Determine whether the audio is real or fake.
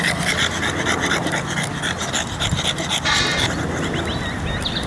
real